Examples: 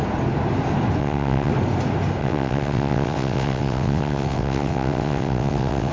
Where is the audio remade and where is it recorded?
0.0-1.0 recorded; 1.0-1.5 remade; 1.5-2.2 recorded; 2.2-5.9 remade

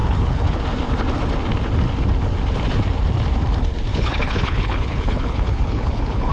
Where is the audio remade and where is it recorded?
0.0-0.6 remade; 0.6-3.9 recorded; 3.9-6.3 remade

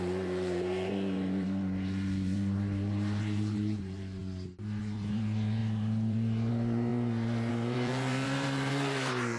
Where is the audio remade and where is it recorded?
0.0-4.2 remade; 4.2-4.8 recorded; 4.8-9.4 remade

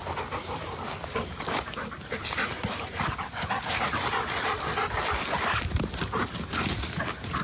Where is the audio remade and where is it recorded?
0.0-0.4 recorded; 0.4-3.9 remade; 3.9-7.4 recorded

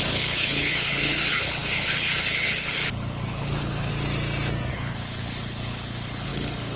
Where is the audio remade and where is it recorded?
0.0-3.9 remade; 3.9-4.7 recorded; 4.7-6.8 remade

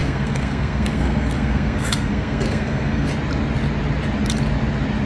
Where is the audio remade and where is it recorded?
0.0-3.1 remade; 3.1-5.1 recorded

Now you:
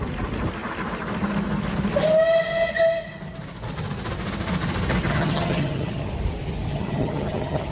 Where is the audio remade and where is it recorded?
0.0-5.1 recorded; 5.1-6.1 remade; 6.1-6.7 recorded; 6.7-7.7 remade